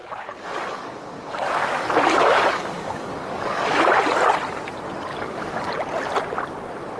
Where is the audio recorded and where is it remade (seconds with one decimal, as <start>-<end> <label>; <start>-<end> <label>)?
0.0-3.8 remade; 3.8-5.1 recorded; 5.1-5.7 remade; 5.7-7.0 recorded